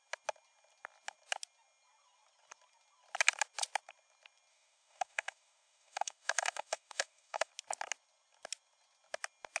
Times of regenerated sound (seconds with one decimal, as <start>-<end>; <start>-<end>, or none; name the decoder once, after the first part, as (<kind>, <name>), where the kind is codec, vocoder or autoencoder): 4.5-7.5 (autoencoder, DAC-VAE)